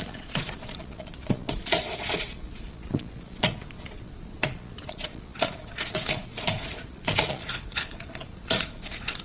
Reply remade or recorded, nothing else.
remade